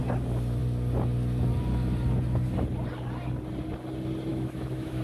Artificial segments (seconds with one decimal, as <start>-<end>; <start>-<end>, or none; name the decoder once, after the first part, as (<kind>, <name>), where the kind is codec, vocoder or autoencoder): 4.3-5.0 (autoencoder, DAC-VAE)